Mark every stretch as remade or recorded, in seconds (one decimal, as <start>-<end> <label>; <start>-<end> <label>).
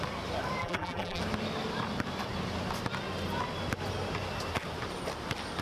0.0-0.6 recorded; 0.6-1.2 remade; 1.2-5.6 recorded